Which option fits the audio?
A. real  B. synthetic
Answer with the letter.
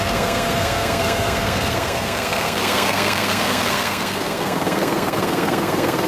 B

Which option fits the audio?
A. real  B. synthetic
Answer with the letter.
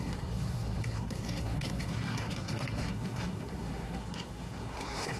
B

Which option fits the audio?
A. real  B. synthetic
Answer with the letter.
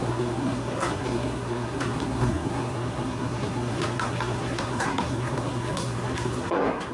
B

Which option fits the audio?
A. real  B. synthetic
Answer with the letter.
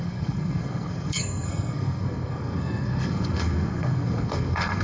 B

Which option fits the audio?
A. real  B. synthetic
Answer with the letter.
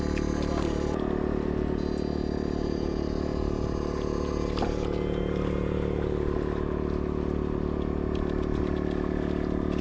A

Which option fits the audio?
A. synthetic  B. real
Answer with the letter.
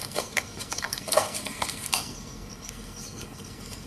A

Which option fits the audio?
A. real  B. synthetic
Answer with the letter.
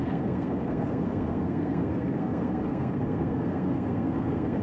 B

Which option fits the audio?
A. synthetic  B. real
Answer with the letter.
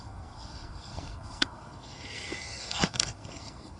A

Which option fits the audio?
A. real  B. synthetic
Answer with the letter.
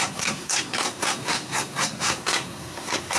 B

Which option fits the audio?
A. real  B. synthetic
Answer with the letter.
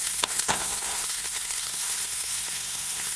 B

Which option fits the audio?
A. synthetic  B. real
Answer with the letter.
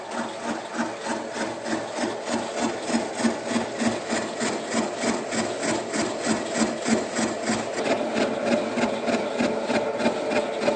B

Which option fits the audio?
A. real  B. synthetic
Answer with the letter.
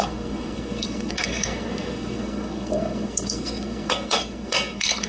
B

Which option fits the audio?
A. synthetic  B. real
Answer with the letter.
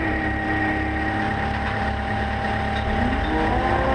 B